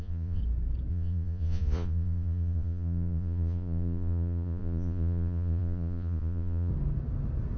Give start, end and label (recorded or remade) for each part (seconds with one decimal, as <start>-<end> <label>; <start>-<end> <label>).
0.0-0.4 remade; 0.4-0.9 recorded; 0.9-6.7 remade; 6.7-7.6 recorded